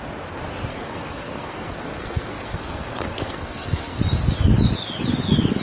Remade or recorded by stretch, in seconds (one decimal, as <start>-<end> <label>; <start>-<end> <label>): 0.0-0.7 recorded; 0.7-4.0 remade; 4.0-5.6 recorded